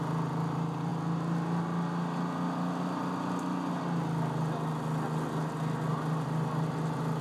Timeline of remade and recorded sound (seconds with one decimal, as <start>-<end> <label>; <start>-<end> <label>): 0.0-7.2 recorded